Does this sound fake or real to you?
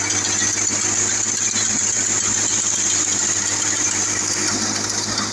real